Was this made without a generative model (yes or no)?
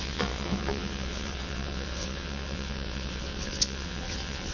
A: no